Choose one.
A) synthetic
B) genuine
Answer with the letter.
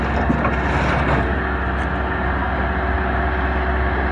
B